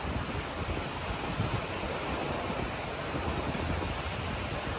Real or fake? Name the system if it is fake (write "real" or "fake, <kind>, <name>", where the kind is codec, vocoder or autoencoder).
real